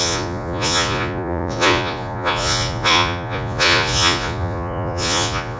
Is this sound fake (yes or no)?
yes